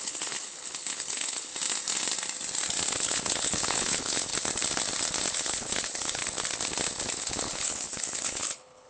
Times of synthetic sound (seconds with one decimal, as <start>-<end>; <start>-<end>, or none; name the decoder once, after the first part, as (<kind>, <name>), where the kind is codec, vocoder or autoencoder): 0.0-1.5 (codec, HILCodec); 2.9-4.3; 5.3-6.2; 7.1-8.9